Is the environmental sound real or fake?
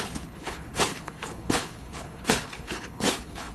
fake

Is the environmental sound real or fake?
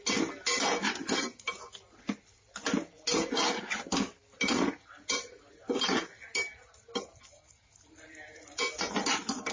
real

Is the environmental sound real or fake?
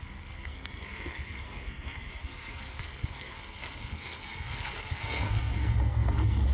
fake